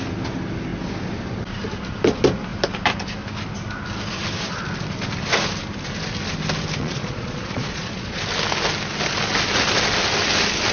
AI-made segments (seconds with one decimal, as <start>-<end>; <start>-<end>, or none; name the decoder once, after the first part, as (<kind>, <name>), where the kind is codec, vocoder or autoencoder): 6.8-8.2 (vocoder, Vocos)